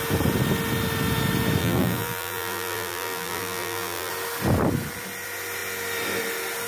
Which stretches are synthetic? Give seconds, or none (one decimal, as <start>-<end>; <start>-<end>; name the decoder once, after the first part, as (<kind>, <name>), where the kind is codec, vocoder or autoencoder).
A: 1.6-4.1 (vocoder, BigVGAN v2)